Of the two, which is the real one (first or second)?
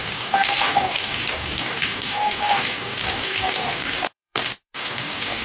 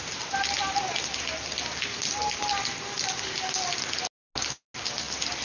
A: second